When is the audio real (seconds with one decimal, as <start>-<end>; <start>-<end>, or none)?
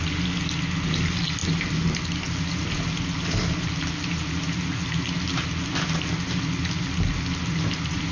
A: 0.0-8.1